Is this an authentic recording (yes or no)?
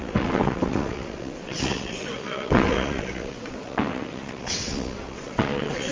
no